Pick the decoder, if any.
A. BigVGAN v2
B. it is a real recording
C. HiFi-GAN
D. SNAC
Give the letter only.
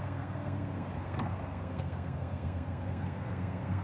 D